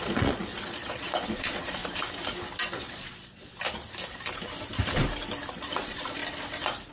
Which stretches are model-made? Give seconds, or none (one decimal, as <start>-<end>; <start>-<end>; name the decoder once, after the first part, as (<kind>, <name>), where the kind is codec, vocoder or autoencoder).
0.0-1.8 (vocoder, Vocos); 2.7-3.5; 5.5-6.2